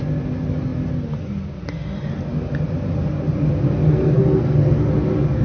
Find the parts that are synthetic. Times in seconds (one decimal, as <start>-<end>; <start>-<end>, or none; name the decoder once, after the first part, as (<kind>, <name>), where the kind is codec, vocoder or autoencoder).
3.9-4.9 (codec, SNAC)